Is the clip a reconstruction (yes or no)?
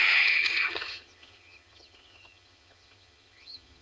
yes